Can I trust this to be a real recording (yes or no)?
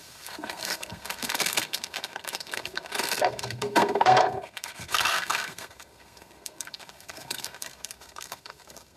no